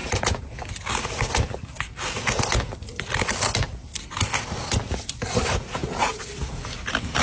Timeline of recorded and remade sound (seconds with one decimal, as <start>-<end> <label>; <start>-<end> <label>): 0.0-7.2 recorded